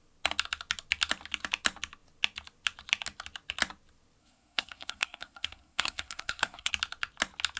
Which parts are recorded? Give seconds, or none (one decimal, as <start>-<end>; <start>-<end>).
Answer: 0.0-4.2; 6.7-7.6